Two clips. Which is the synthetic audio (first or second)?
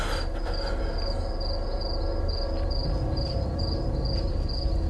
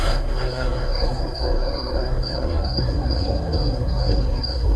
second